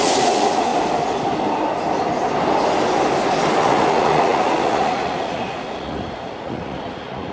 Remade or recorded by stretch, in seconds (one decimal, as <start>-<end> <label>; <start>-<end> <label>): 0.0-0.7 remade; 0.7-3.6 recorded; 3.6-7.3 remade